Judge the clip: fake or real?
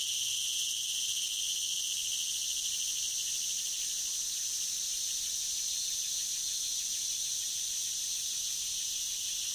real